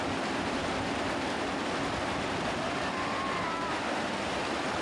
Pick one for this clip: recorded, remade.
recorded